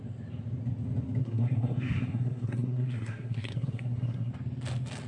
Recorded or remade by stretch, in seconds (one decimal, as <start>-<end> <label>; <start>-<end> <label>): 0.0-1.2 recorded; 1.2-4.3 remade; 4.3-5.1 recorded